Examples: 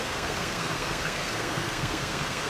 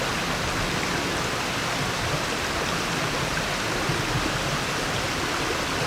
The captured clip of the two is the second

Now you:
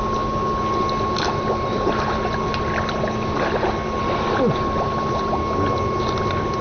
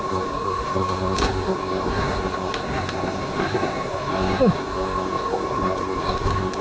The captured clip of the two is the first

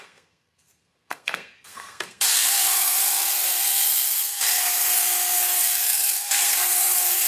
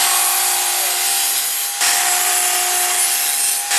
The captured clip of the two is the second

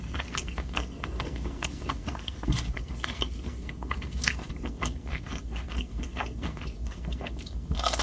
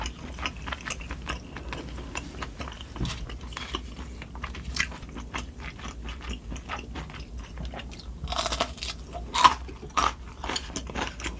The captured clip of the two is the second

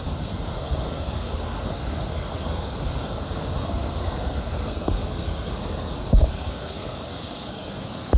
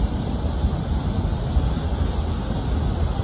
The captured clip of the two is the second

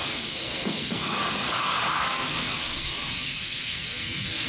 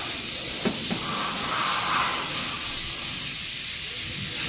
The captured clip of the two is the second